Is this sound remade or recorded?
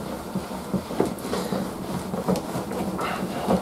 recorded